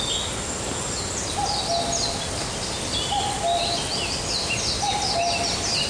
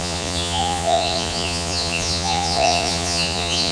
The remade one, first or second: second